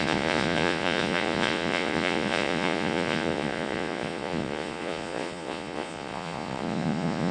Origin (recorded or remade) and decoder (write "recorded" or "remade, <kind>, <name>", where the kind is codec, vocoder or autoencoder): remade, vocoder, Vocos